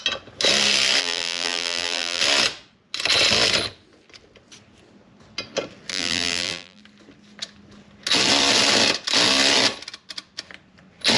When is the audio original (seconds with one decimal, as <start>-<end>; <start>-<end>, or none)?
0.0-1.0; 2.2-5.9; 6.8-11.2

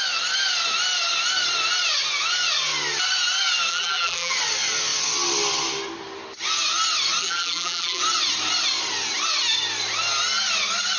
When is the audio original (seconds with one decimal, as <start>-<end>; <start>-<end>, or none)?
0.0-3.7; 4.3-7.2; 8.0-11.0

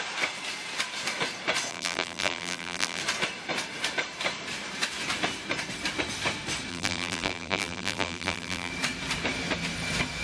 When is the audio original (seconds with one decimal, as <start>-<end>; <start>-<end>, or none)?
0.0-1.7; 3.0-6.7; 8.7-10.2

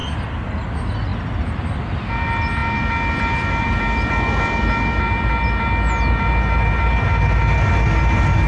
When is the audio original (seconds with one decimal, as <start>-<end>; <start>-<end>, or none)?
0.0-8.5

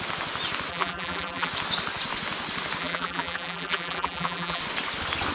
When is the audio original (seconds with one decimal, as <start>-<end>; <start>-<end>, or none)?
0.0-0.7; 1.5-2.8; 4.6-5.3

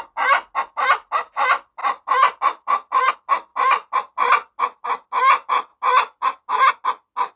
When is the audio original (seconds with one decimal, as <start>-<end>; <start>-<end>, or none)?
0.0-1.8; 3.1-7.4